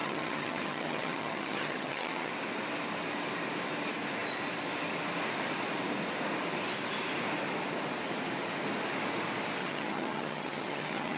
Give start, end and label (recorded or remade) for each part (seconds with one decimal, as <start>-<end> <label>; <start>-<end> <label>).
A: 0.0-2.3 remade; 2.3-9.6 recorded; 9.6-11.2 remade